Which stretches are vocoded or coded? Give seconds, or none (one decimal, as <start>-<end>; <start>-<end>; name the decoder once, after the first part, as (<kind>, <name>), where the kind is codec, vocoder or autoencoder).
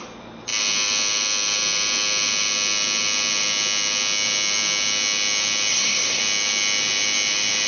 5.7-6.2 (codec, SNAC)